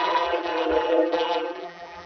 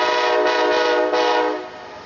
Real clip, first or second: second